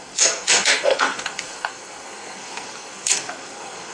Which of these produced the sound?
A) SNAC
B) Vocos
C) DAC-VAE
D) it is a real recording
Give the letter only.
A